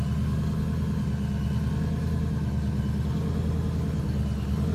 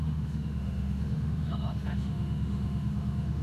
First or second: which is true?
first